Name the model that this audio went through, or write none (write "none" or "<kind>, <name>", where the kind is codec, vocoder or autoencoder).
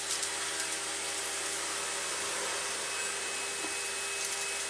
none